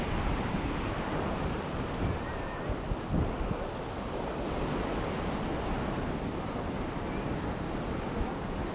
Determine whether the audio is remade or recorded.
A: recorded